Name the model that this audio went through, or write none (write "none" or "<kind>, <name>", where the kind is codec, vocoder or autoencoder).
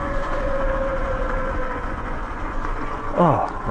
vocoder, Vocos